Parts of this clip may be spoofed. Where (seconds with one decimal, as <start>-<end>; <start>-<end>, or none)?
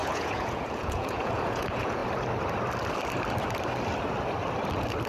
0.0-2.0